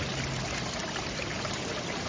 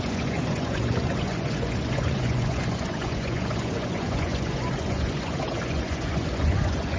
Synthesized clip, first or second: second